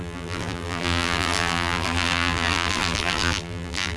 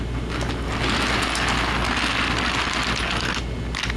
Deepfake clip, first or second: first